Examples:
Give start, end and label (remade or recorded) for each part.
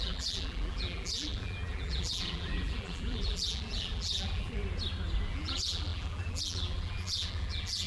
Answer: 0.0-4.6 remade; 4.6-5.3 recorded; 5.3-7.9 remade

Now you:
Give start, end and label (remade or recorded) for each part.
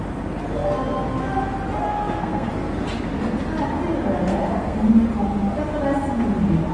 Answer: 0.0-1.9 recorded; 1.9-2.5 remade; 2.5-4.3 recorded; 4.3-4.9 remade; 4.9-6.7 recorded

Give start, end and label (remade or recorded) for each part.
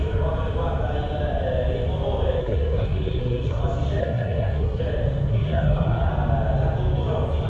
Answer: 0.0-2.4 recorded; 2.4-3.6 remade; 3.6-4.0 recorded; 4.0-4.8 remade; 4.8-5.3 recorded; 5.3-6.1 remade; 6.1-7.5 recorded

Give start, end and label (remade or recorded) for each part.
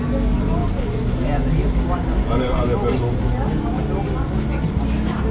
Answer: 0.0-5.3 recorded